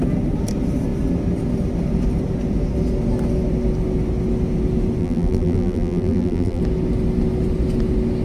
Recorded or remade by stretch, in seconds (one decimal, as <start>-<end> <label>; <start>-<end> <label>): 0.0-5.0 recorded; 5.0-6.6 remade; 6.6-8.2 recorded